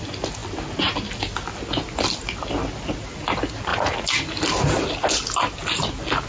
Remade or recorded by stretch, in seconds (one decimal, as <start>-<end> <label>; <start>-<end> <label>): 0.0-6.3 recorded